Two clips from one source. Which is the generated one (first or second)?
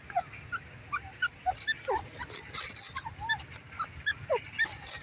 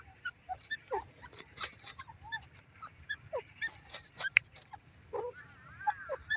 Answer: second